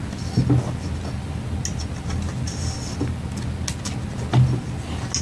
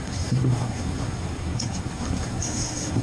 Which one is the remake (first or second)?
second